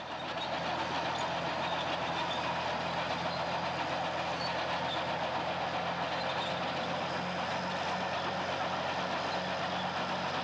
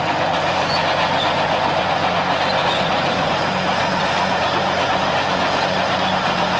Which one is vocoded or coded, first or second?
second